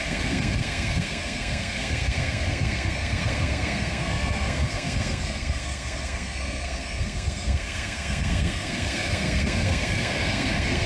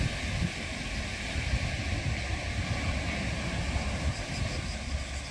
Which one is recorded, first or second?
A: second